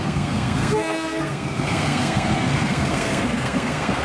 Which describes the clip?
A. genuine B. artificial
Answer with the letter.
B